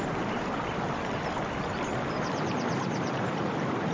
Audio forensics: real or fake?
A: real